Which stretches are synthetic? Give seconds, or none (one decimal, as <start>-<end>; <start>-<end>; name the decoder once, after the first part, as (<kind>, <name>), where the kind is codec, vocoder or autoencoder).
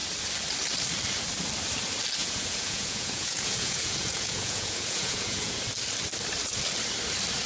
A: 2.2-5.6 (vocoder, Vocos)